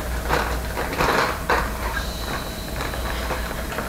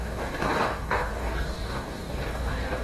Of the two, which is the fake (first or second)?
second